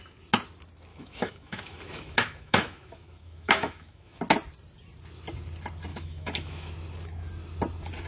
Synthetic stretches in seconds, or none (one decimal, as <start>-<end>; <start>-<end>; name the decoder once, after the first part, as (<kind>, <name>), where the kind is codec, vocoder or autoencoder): 0.9-4.2 (autoencoder, DAC-VAE); 5.9-6.7